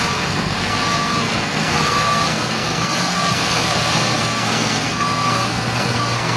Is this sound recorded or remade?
remade